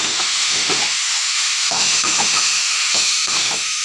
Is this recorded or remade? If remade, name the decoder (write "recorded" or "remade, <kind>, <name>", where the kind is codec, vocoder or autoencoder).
remade, autoencoder, DAC-VAE